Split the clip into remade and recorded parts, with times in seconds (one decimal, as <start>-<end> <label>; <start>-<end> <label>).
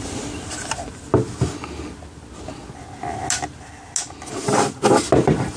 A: 0.0-5.6 recorded